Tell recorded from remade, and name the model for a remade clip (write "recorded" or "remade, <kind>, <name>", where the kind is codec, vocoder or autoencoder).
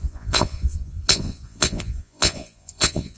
remade, vocoder, Vocos